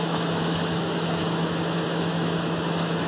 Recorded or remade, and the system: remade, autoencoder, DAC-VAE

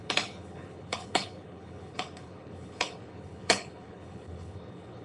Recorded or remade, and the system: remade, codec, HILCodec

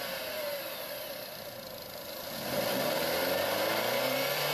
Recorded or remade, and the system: remade, vocoder, BigVGAN v2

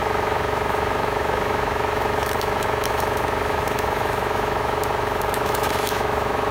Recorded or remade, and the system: remade, autoencoder, DAC-VAE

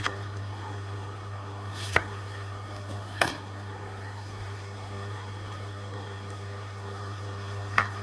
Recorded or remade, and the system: remade, codec, SNAC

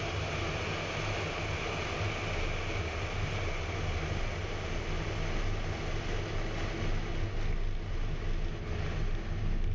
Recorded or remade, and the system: recorded